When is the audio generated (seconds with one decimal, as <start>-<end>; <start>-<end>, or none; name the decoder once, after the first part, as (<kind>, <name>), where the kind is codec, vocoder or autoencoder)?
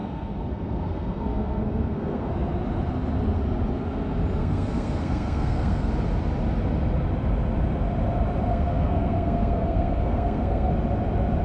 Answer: 0.0-2.3 (codec, SNAC); 4.4-5.9; 8.5-10.7